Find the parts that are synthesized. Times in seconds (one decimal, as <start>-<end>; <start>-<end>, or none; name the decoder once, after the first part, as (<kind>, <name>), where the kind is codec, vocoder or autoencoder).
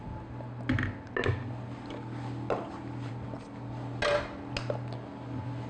none